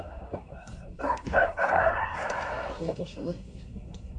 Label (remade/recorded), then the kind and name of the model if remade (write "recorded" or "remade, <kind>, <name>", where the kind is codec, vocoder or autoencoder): remade, codec, SNAC